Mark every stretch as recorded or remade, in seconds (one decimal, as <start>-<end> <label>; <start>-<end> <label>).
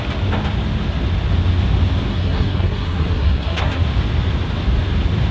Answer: 0.0-2.1 recorded; 2.1-3.8 remade; 3.8-5.3 recorded